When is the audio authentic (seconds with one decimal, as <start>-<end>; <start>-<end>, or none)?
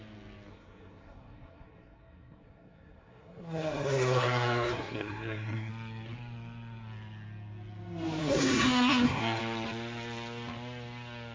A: 0.0-0.5; 5.7-8.2; 9.4-11.3